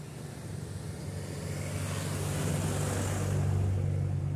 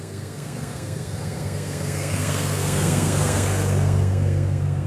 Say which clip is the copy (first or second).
second